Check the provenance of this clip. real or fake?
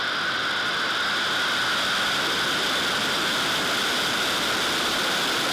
real